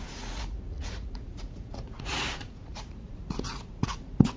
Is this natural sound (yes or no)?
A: no